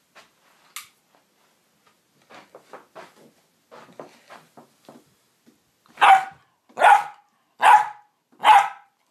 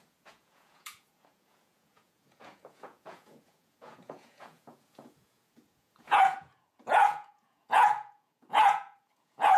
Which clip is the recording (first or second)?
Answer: first